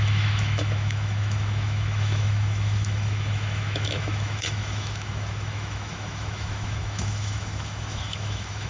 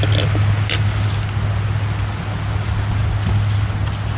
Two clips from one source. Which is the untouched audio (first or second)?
second